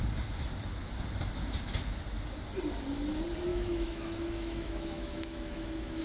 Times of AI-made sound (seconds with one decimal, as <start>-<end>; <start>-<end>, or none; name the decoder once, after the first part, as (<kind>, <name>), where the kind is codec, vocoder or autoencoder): 3.5-6.0 (autoencoder, DAC-VAE)